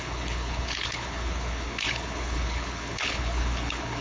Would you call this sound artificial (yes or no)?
yes